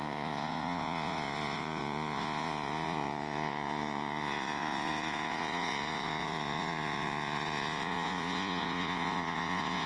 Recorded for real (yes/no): no